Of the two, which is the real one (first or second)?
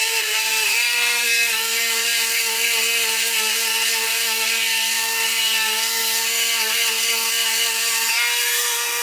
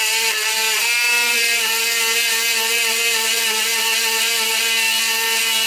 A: second